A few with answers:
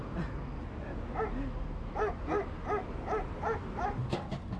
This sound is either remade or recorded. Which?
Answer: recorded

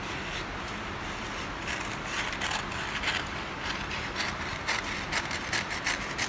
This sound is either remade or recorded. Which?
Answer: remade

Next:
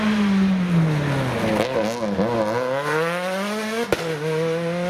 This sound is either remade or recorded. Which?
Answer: recorded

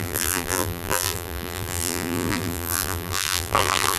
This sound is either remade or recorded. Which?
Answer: remade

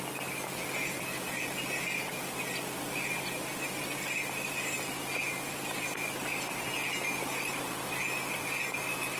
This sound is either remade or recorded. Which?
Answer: recorded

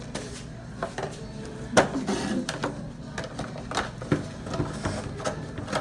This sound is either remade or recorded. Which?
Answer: recorded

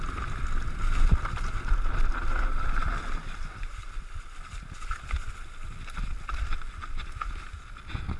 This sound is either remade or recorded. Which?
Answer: recorded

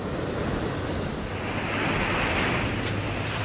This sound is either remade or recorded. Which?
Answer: recorded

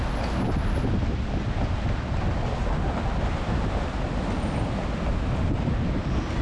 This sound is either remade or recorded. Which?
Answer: recorded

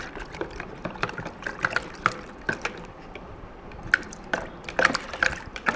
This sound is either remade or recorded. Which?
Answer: remade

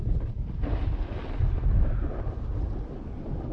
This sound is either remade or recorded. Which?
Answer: recorded